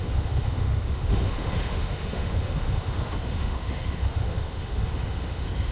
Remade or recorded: remade